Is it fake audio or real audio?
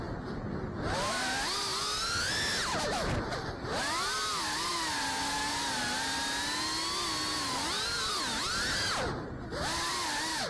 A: real